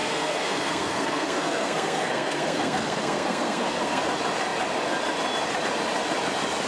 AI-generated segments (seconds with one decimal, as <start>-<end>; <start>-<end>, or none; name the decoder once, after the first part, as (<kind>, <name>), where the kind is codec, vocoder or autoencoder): 0.0-4.0 (codec, SNAC)